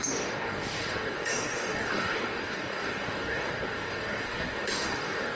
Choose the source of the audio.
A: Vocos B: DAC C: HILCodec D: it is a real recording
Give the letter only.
B